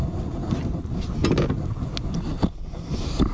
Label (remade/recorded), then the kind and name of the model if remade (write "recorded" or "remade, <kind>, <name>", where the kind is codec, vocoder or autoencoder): recorded